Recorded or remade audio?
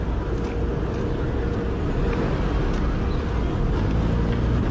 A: recorded